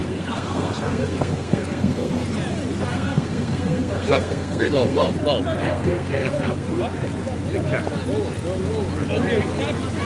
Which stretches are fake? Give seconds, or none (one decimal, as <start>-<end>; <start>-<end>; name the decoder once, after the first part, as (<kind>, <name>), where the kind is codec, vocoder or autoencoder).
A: 0.0-2.1 (codec, SNAC); 2.9-5.1; 5.6-6.8